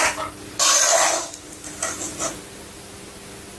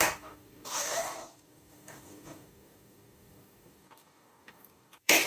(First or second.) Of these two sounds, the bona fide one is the first